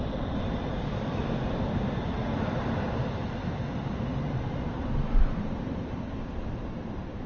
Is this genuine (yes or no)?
no